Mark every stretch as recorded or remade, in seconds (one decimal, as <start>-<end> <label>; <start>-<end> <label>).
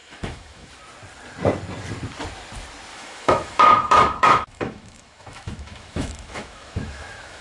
0.0-0.7 remade; 0.7-2.9 recorded; 2.9-7.4 remade